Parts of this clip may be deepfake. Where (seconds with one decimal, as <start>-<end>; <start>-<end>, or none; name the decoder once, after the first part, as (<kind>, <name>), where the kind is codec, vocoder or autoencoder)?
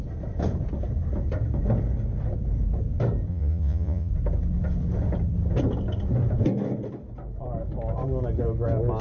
3.3-4.1 (vocoder, Vocos)